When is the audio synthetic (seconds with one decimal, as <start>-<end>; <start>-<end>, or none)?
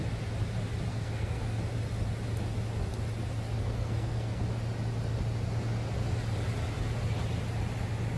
0.9-1.6; 3.6-4.4